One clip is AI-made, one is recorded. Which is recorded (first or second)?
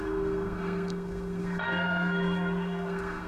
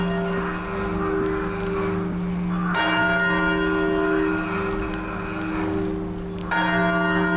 second